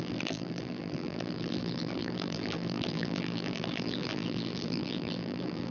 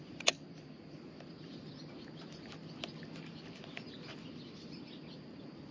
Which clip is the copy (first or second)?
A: first